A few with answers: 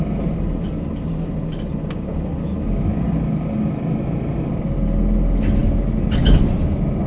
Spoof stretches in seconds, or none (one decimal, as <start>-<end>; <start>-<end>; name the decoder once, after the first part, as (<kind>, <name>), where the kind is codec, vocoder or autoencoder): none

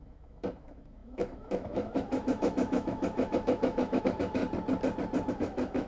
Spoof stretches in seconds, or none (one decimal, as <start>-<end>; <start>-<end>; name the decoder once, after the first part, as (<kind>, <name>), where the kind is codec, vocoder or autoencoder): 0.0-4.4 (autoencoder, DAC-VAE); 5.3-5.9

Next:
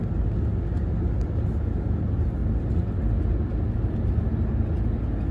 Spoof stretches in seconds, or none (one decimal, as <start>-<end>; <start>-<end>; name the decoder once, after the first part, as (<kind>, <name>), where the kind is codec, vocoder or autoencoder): 2.4-4.3 (vocoder, BigVGAN v2)

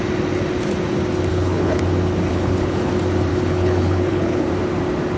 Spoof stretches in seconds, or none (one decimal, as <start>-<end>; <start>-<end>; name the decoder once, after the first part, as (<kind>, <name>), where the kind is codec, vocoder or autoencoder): 1.3-1.8 (codec, HILCodec); 2.3-2.9; 3.3-4.5

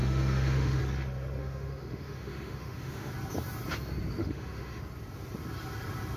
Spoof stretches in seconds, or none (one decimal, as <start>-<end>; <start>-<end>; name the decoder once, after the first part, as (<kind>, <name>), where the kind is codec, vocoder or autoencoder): 0.0-0.8 (autoencoder, DAC-VAE); 1.4-3.1; 4.2-4.8

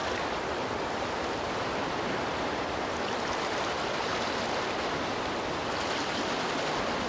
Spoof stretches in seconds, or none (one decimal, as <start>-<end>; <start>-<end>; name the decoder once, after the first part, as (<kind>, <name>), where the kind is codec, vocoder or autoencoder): 0.0-7.1 (vocoder, BigVGAN v2)

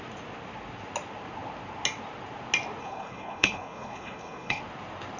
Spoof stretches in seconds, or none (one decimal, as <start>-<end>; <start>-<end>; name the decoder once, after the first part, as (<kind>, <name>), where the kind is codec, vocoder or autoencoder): 2.8-4.6 (codec, HILCodec)

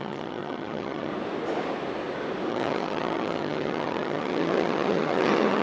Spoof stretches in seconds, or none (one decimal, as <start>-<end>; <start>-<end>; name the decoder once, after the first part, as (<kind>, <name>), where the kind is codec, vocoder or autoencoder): 0.0-1.1 (vocoder, HiFi-GAN); 2.5-5.6